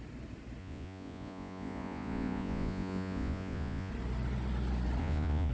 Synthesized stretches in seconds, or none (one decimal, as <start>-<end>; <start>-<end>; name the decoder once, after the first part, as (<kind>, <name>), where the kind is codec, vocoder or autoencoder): 0.6-3.9 (vocoder, Vocos); 5.0-5.5